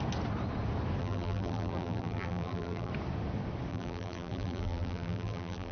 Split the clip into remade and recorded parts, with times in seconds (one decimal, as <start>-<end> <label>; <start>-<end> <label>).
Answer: 0.0-1.0 recorded; 1.0-2.9 remade; 2.9-3.7 recorded; 3.7-5.7 remade

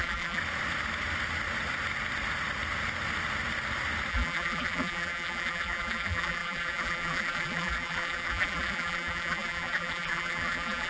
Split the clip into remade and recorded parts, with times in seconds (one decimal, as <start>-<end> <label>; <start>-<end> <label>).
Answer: 0.0-0.4 remade; 0.4-4.1 recorded; 4.1-10.9 remade

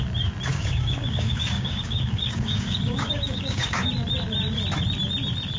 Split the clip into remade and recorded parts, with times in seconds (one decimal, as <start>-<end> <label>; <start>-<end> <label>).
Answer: 0.0-0.5 recorded; 0.5-3.9 remade; 3.9-5.6 recorded

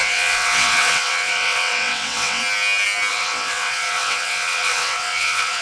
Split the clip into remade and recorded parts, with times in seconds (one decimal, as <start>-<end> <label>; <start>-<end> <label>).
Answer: 0.0-2.4 remade; 2.4-3.1 recorded; 3.1-5.6 remade

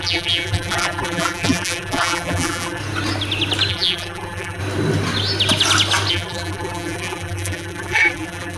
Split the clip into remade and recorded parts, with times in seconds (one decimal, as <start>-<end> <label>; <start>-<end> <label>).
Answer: 0.0-2.8 remade; 2.8-3.7 recorded; 3.7-4.6 remade; 4.6-6.1 recorded; 6.1-8.6 remade

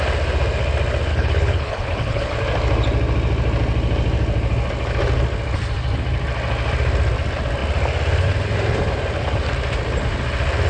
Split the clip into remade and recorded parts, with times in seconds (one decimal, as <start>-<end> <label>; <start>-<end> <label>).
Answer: 0.0-1.1 recorded; 1.1-2.3 remade; 2.3-10.7 recorded